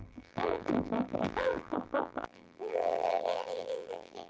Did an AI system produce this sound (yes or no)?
yes